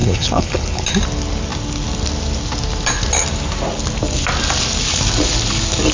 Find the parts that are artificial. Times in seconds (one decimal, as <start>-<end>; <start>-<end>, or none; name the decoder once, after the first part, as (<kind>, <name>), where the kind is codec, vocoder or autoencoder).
0.0-0.8 (codec, HILCodec)